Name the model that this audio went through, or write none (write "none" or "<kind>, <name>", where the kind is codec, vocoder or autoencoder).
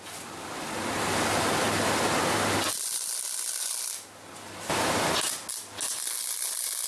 none